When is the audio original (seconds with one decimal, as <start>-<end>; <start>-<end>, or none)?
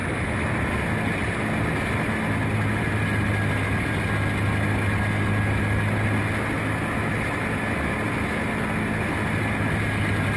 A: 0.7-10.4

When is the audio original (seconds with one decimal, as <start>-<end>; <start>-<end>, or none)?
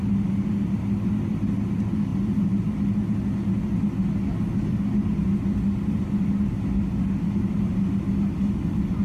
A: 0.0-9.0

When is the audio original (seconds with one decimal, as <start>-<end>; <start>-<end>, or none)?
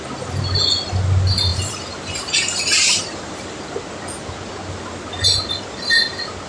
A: 0.0-1.5; 3.6-6.5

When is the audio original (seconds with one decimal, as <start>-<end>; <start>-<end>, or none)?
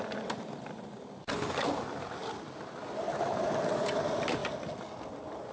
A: 2.2-3.7; 4.4-5.1